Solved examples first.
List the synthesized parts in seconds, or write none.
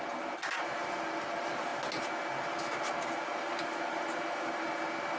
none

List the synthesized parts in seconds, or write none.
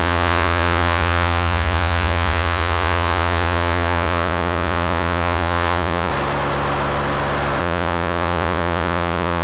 0.0-6.1 (vocoder, Vocos); 7.6-9.4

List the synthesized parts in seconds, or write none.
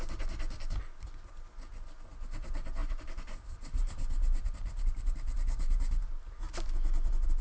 2.8-6.7 (vocoder, BigVGAN v2)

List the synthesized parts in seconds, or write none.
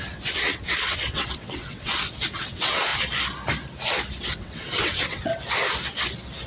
0.0-2.9 (vocoder, WaveNeXt); 4.2-5.3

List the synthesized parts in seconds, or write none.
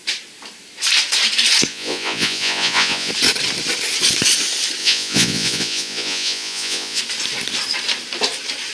1.7-3.1 (vocoder, Vocos); 4.8-7.0